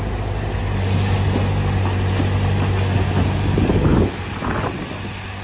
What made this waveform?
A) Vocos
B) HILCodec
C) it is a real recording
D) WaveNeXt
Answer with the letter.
C